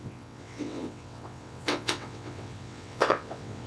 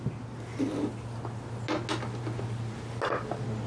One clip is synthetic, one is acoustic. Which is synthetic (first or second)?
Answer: first